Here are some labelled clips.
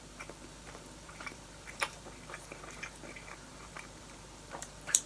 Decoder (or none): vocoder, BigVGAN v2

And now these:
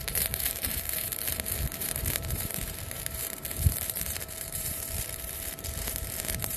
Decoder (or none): vocoder, BigVGAN v2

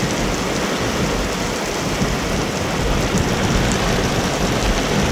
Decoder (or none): none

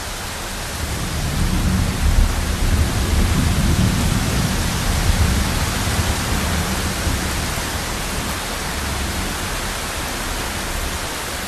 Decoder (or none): none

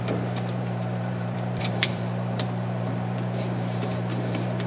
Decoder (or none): vocoder, BigVGAN v2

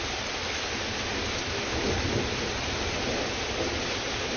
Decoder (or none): none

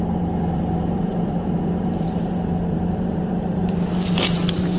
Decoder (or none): vocoder, BigVGAN v2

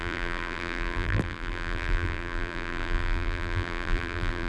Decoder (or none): vocoder, BigVGAN v2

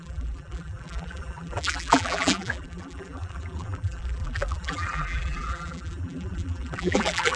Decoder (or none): vocoder, BigVGAN v2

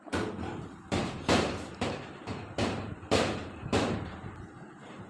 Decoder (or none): vocoder, BigVGAN v2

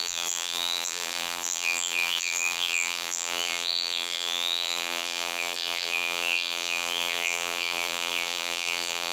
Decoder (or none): vocoder, BigVGAN v2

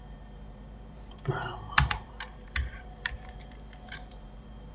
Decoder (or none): vocoder, BigVGAN v2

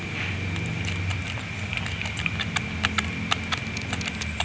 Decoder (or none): none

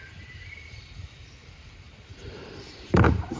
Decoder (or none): vocoder, BigVGAN v2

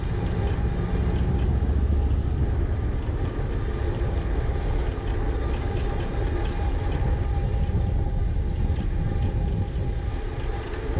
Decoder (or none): none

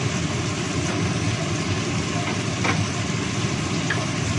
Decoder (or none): none